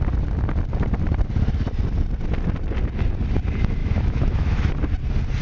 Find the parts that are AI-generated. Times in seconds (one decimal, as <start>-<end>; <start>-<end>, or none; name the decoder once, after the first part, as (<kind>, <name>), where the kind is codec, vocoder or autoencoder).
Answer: 3.8-4.7 (autoencoder, DAC-VAE)

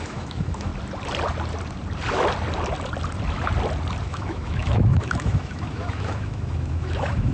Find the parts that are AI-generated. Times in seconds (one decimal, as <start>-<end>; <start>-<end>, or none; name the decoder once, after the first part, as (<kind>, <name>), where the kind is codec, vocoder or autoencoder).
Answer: 0.0-0.7 (autoencoder, DAC-VAE); 4.0-7.3

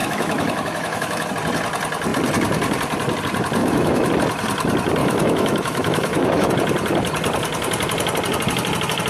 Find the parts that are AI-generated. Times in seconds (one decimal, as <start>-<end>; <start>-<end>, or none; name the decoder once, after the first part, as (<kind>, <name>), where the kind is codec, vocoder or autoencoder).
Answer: 0.0-1.3 (autoencoder, DAC-VAE); 3.6-4.1; 5.0-6.5

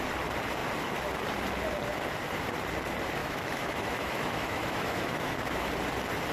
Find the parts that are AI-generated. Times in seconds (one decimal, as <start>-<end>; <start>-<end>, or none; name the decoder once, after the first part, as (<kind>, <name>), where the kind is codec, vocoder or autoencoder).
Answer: 3.2-5.7 (autoencoder, DAC-VAE)

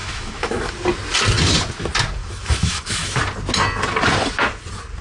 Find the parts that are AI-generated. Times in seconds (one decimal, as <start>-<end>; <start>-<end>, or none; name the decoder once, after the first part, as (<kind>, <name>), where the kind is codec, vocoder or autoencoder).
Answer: 0.0-0.7 (autoencoder, DAC-VAE); 2.2-3.2

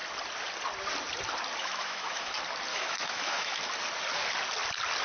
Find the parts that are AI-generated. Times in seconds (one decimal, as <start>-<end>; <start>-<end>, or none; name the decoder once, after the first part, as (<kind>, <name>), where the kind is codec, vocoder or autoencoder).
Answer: 1.6-2.3 (autoencoder, DAC-VAE); 2.7-3.6